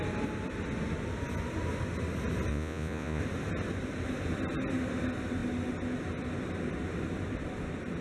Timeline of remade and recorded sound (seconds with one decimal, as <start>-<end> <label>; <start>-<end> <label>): 0.0-2.5 recorded; 2.5-3.2 remade; 3.2-8.0 recorded